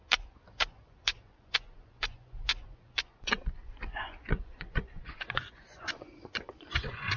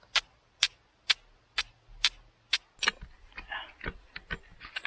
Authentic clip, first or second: second